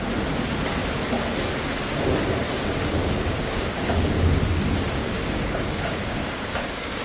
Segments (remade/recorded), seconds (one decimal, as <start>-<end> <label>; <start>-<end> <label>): 0.0-3.0 recorded; 3.0-4.6 remade; 4.6-5.0 recorded; 5.0-7.0 remade